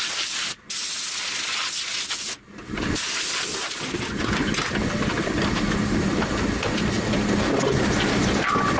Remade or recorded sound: recorded